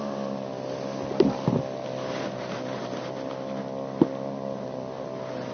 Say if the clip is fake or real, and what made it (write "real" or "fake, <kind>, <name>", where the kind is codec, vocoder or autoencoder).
real